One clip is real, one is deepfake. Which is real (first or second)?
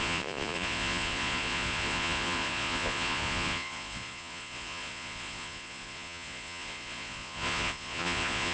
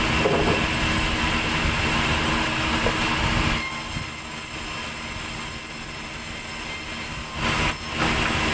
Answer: second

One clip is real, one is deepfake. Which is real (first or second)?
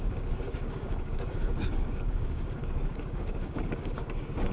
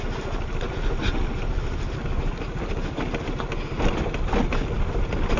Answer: second